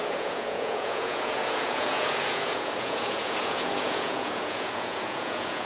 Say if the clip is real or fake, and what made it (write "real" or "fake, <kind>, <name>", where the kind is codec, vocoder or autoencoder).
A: fake, vocoder, Vocos